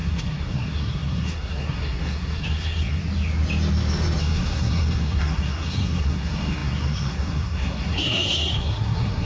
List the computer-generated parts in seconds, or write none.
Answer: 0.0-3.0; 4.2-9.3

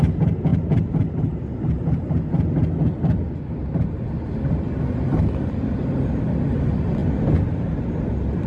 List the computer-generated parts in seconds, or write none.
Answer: none

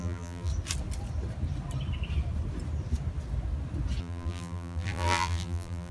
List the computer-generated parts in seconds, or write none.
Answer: 0.0-0.5; 4.0-5.9